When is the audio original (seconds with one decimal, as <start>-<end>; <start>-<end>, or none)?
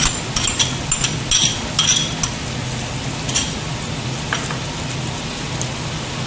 0.0-6.3